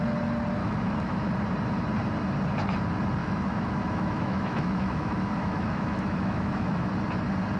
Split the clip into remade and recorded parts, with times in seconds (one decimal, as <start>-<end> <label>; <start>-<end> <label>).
0.0-0.6 recorded; 0.6-1.3 remade; 1.3-3.2 recorded; 3.2-6.9 remade; 6.9-7.6 recorded